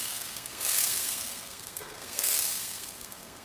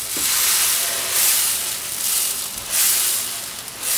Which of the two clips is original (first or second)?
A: second